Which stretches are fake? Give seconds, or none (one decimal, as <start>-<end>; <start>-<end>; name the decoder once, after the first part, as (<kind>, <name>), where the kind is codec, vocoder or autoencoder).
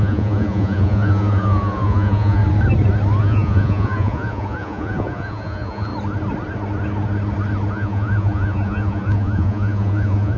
0.0-2.4 (vocoder, Vocos); 3.2-5.9; 7.7-10.4